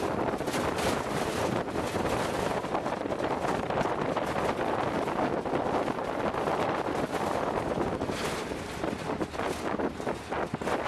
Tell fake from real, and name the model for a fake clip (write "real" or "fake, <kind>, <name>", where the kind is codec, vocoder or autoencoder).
real